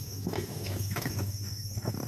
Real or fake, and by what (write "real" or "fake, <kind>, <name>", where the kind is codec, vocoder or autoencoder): fake, codec, DAC